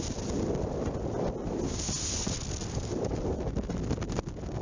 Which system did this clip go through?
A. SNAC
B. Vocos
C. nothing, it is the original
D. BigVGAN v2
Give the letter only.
C